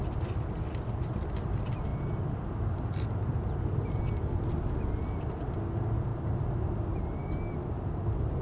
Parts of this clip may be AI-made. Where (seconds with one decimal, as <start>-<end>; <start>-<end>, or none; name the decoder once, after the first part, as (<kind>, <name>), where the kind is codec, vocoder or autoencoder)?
none